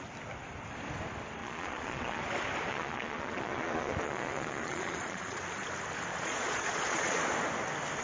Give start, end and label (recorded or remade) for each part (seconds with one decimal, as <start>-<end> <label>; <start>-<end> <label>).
0.0-1.4 recorded; 1.4-2.2 remade; 2.2-2.7 recorded; 2.7-5.4 remade; 5.4-6.1 recorded; 6.1-7.2 remade; 7.2-8.0 recorded